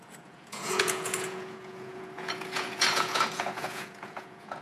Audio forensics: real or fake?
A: fake